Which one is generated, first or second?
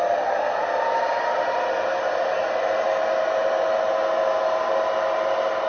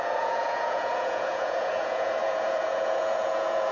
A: second